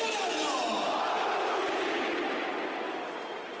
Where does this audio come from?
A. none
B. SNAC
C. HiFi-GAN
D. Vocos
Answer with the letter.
A